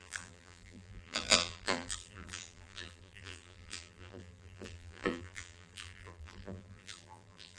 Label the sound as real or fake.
fake